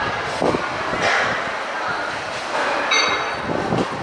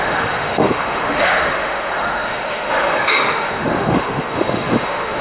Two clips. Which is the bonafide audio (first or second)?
first